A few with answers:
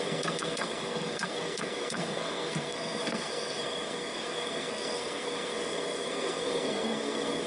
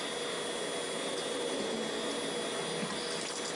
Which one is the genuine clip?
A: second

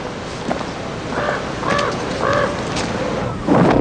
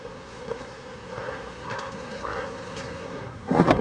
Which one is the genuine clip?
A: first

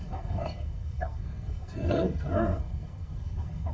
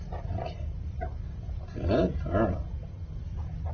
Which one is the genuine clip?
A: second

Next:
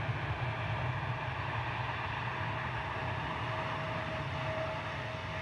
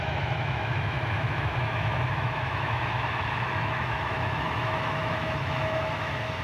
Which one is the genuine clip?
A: first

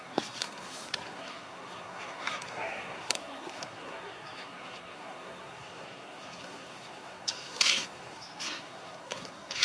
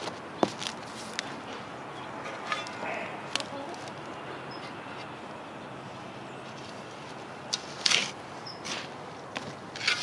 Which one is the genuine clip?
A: second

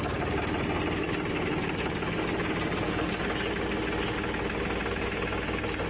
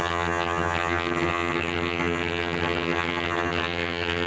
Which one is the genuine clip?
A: first